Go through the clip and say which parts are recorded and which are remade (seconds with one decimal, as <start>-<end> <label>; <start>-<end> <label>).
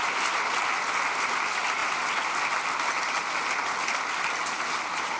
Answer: 0.0-5.2 recorded